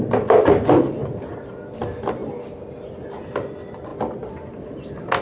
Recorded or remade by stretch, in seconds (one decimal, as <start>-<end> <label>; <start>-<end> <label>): 0.0-5.2 recorded